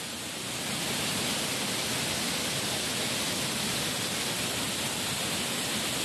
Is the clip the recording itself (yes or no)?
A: yes